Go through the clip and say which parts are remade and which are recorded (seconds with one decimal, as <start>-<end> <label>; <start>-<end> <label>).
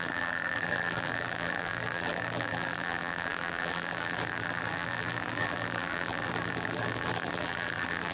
0.0-8.1 remade